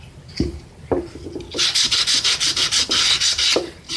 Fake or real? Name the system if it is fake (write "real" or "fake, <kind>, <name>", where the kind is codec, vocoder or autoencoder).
real